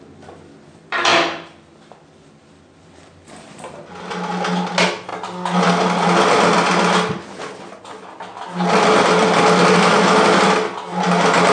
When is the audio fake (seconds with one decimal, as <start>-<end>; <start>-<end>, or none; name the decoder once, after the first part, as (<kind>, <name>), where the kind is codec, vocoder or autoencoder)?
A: 1.1-2.5 (vocoder, BigVGAN v2)